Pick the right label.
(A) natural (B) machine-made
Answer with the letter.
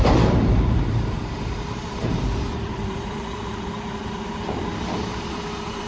B